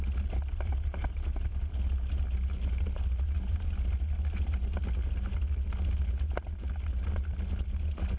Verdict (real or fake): real